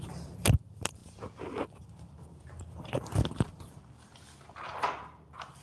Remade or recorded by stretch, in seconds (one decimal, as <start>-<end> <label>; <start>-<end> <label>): 0.0-5.6 recorded